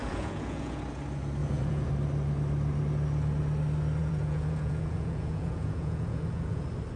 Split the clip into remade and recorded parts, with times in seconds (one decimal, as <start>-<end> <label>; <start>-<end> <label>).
0.0-0.8 remade; 0.8-1.4 recorded; 1.4-1.9 remade; 1.9-4.0 recorded; 4.0-6.6 remade; 6.6-7.0 recorded